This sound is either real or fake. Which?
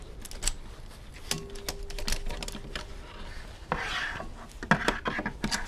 real